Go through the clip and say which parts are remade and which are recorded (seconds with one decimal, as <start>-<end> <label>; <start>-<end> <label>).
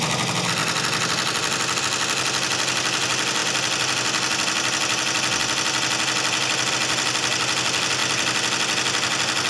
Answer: 0.0-9.5 recorded